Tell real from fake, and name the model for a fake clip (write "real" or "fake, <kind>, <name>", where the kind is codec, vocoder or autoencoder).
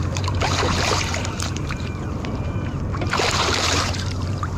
fake, vocoder, BigVGAN v2